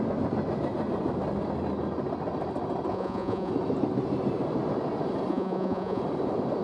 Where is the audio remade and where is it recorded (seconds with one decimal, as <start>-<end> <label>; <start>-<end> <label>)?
0.0-2.9 recorded; 2.9-3.5 remade; 3.5-5.3 recorded; 5.3-6.0 remade; 6.0-6.6 recorded